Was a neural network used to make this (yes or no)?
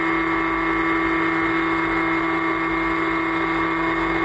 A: no